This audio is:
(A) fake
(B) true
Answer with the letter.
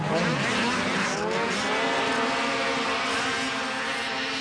B